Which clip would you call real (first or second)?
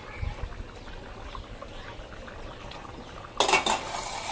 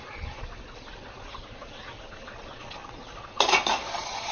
first